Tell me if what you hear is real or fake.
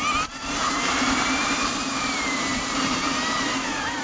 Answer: fake